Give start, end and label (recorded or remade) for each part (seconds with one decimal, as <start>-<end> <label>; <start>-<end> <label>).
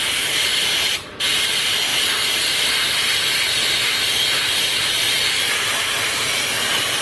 0.0-1.2 remade; 1.2-1.9 recorded; 1.9-6.0 remade; 6.0-7.0 recorded